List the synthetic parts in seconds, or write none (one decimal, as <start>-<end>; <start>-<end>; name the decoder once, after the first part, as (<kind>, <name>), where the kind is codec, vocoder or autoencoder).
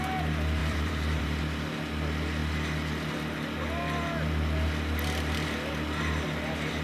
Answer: 0.6-1.4 (vocoder, BigVGAN v2)